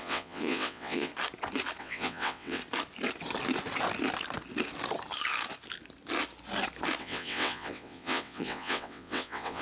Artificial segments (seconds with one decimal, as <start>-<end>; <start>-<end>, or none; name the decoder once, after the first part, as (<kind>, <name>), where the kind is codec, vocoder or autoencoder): 0.0-1.1 (vocoder, WaveNeXt); 1.8-2.6; 7.0-9.6